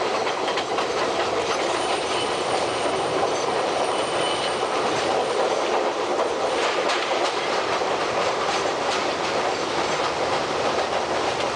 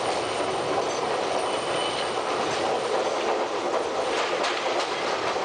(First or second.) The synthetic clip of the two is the first